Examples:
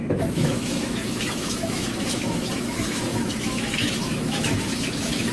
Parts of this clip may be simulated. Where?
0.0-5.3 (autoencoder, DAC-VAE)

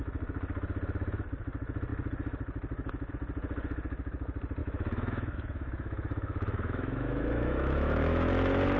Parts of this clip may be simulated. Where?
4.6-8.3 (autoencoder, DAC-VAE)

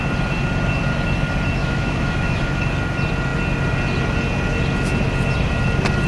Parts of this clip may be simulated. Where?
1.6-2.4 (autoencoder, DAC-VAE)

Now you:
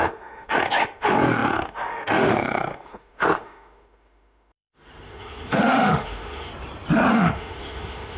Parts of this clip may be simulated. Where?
0.0-6.5 (autoencoder, DAC-VAE); 7.1-8.2

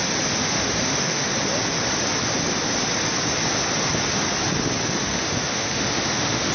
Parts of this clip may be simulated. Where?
0.4-1.3 (autoencoder, DAC-VAE); 5.1-6.5